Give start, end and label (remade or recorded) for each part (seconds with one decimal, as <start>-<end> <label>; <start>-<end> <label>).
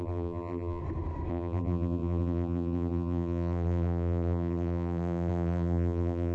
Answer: 0.0-0.8 remade; 0.8-1.3 recorded; 1.3-6.3 remade